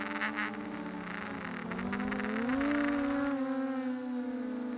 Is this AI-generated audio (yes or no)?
no